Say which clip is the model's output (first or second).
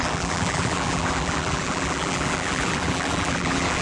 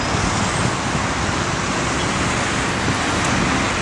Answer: first